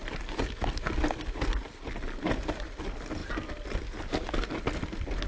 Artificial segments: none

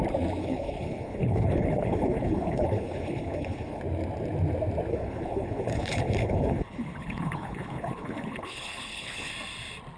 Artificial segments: 0.4-3.8; 4.9-9.3

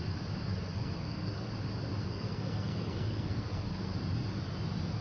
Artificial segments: 0.7-1.5; 2.0-3.9

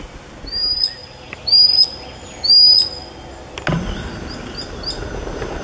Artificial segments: none

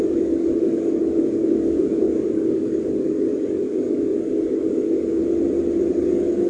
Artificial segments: 0.0-5.2; 5.9-6.5

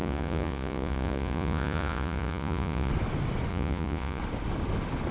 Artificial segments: 0.0-2.9; 3.5-4.2